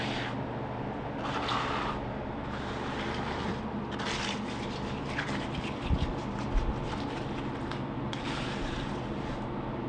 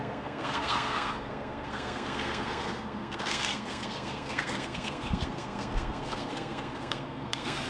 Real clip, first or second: first